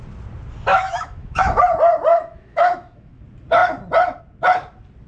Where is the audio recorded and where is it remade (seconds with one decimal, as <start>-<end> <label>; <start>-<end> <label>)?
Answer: 0.0-0.7 recorded; 0.7-1.6 remade; 1.6-2.1 recorded; 2.1-3.2 remade; 3.2-5.1 recorded